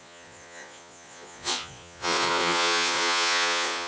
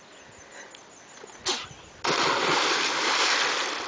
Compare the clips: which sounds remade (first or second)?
first